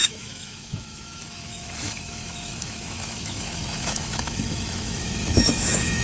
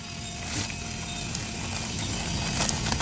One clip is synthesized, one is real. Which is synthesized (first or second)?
first